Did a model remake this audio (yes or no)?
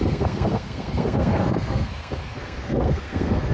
yes